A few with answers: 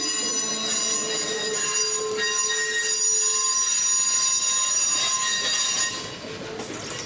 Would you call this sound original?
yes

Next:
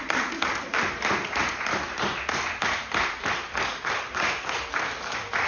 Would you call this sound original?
yes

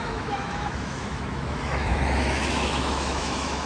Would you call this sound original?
no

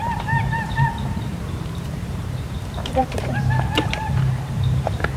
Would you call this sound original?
no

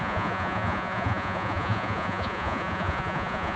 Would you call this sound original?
no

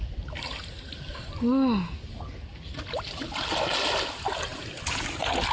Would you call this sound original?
yes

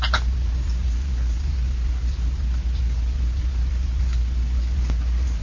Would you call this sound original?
yes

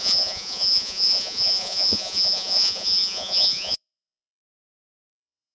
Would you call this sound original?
no